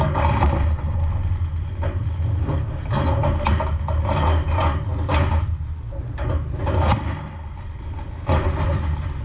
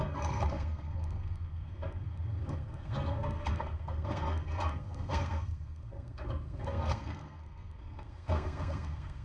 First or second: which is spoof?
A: second